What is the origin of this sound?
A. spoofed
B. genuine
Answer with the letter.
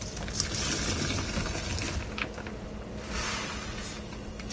B